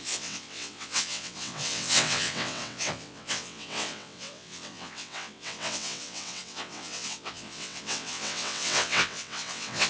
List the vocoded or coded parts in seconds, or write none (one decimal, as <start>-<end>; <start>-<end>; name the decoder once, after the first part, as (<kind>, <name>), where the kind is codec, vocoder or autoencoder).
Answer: 0.0-9.9 (vocoder, WaveNeXt)